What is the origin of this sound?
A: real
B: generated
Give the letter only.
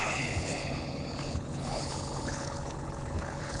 B